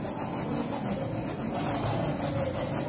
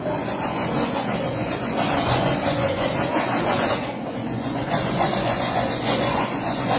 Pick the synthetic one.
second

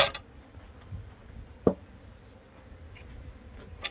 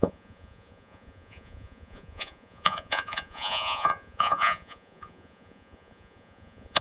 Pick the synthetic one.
second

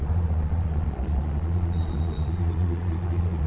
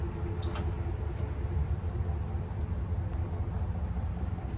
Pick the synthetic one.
first